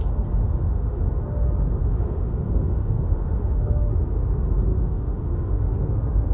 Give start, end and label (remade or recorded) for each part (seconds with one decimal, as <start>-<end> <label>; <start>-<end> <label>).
0.0-0.4 recorded; 0.4-1.0 remade; 1.0-1.8 recorded; 1.8-3.9 remade; 3.9-4.7 recorded; 4.7-5.6 remade; 5.6-6.3 recorded